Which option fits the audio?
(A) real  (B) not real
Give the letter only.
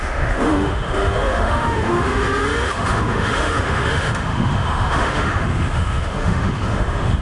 B